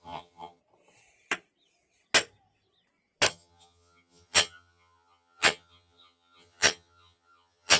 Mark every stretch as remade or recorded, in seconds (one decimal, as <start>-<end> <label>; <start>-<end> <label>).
0.0-0.6 remade; 0.6-3.3 recorded; 3.3-7.8 remade